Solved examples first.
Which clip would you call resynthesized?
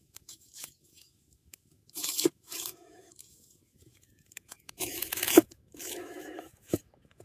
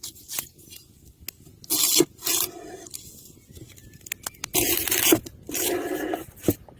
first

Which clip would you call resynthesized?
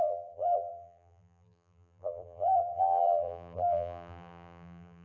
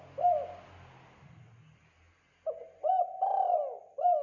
first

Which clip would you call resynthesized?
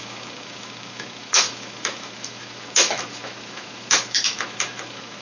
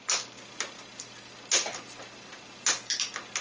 first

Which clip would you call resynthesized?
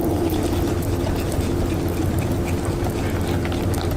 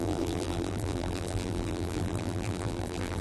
second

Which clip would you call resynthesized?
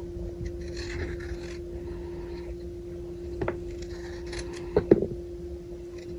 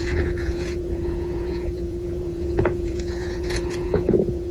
second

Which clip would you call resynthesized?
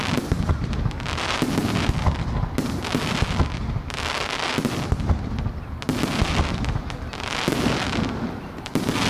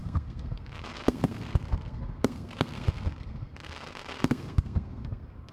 second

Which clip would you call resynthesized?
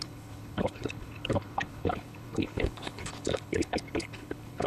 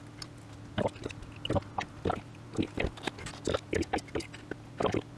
first